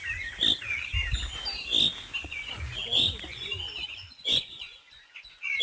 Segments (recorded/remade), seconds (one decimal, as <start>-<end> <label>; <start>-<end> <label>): 0.0-2.2 recorded; 2.2-5.6 remade

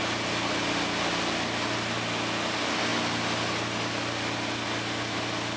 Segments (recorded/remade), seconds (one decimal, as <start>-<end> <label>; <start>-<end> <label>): 0.0-5.6 recorded

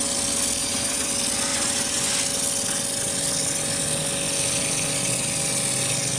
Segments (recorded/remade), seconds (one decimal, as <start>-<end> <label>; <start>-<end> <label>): 0.0-0.6 recorded; 0.6-1.1 remade; 1.1-1.5 recorded; 1.5-2.1 remade; 2.1-6.2 recorded

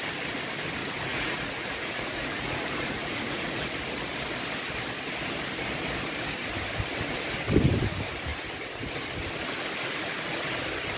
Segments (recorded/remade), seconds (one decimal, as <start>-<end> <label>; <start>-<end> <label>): 0.0-0.8 recorded; 0.8-3.6 remade; 3.6-11.0 recorded

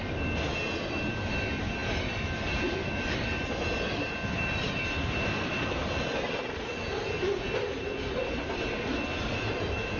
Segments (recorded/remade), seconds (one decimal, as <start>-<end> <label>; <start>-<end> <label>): 0.0-10.0 recorded

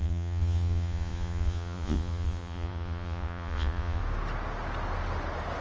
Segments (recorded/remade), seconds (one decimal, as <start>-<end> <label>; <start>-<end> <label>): 0.0-4.0 remade; 4.0-5.6 recorded

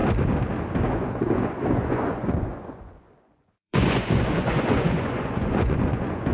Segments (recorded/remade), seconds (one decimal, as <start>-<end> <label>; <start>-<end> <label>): 0.0-0.9 recorded; 0.9-6.3 remade

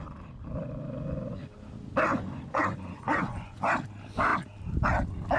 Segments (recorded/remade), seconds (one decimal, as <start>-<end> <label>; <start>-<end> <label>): 0.0-2.1 recorded; 2.1-3.7 remade; 3.7-5.4 recorded